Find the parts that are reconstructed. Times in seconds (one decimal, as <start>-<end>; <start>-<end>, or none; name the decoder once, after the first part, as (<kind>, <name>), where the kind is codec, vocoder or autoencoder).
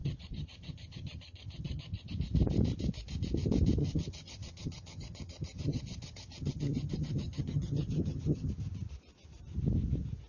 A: 0.0-2.1 (vocoder, HiFi-GAN); 3.8-8.5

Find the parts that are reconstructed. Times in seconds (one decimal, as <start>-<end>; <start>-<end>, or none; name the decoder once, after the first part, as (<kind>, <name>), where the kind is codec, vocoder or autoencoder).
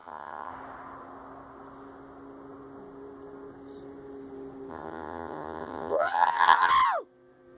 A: 0.0-0.5 (vocoder, HiFi-GAN); 4.7-6.7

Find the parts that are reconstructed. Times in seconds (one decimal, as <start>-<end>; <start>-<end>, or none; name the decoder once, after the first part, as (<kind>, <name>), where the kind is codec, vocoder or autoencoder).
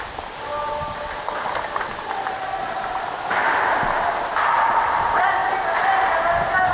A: none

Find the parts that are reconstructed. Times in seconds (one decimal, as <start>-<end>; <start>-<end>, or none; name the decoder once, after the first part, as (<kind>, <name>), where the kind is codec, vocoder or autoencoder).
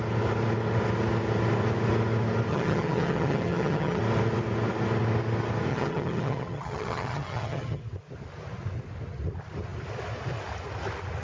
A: 2.5-4.0 (vocoder, HiFi-GAN); 5.7-7.8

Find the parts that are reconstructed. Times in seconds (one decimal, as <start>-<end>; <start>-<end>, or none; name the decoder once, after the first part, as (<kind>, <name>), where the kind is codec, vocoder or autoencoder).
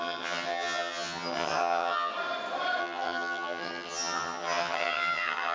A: 0.0-2.1 (vocoder, HiFi-GAN); 2.8-5.5